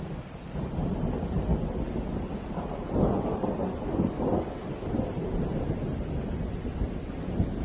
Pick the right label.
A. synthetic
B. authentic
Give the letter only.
B